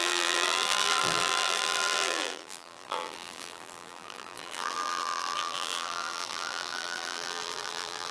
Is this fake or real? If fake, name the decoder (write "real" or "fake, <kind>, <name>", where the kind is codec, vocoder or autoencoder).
fake, vocoder, BigVGAN v2